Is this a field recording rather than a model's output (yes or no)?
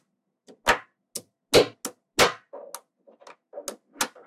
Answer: yes